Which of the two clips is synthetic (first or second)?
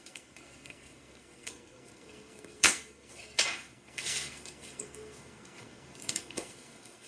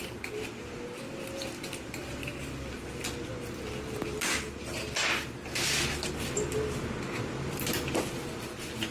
first